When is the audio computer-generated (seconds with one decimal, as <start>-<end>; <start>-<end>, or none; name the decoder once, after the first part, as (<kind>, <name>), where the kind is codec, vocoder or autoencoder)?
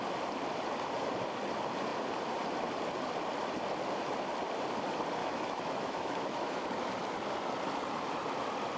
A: 5.2-6.6 (autoencoder, DAC-VAE)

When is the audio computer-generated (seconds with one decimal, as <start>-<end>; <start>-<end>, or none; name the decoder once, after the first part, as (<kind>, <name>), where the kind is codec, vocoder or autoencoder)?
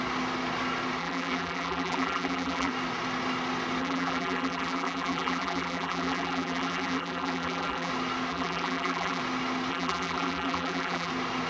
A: 1.0-2.7 (vocoder, BigVGAN v2); 3.8-7.9; 8.3-9.2; 9.7-11.1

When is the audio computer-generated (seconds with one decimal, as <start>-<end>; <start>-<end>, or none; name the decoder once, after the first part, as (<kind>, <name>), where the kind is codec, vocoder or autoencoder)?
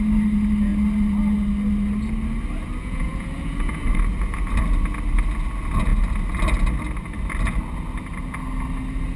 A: 2.8-3.3 (vocoder, Vocos)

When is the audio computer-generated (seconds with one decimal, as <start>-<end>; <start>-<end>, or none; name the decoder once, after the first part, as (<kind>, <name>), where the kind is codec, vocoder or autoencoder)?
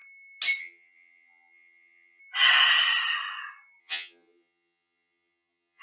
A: 0.6-2.2 (vocoder, HiFi-GAN); 3.8-5.8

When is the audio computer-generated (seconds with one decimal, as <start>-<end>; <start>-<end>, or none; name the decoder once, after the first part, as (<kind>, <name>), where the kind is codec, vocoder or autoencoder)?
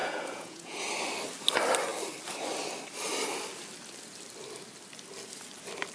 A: 0.0-0.8 (vocoder, Vocos)